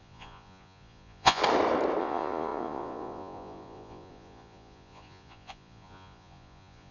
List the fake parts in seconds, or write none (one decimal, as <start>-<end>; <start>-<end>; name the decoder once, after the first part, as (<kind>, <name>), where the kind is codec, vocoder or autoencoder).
0.0-1.4 (vocoder, Vocos); 2.0-6.9